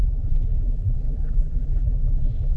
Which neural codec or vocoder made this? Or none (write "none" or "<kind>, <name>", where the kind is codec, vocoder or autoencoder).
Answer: vocoder, BigVGAN v2